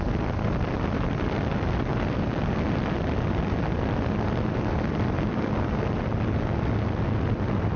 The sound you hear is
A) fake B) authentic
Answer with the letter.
B